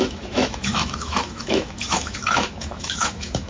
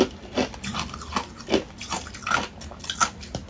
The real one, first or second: second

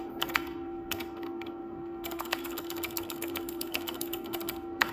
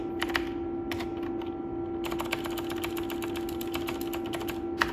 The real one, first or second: second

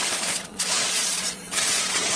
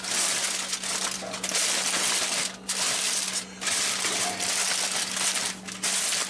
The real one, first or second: second